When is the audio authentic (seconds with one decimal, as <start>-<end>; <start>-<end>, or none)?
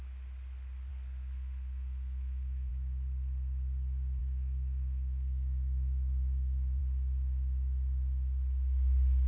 0.0-0.9; 2.7-4.2; 6.8-9.3